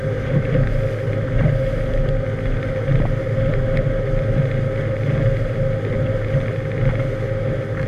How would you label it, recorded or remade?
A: recorded